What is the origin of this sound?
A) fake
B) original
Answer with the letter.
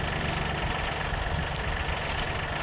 B